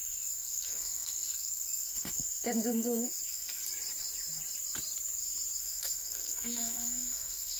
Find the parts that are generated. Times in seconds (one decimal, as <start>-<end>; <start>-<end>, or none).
0.0-3.6; 5.6-7.6